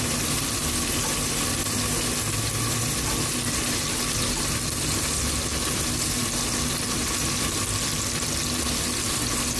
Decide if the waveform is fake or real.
real